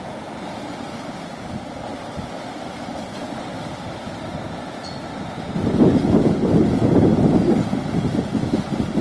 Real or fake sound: real